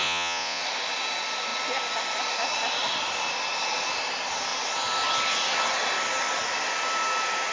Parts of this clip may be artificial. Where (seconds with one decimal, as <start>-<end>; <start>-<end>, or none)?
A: 0.0-0.6